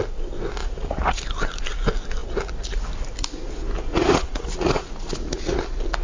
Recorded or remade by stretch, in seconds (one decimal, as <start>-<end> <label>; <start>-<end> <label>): 0.0-0.6 recorded; 0.6-1.2 remade; 1.2-3.9 recorded; 3.9-5.6 remade; 5.6-6.0 recorded